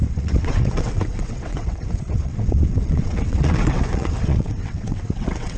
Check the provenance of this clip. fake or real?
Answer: fake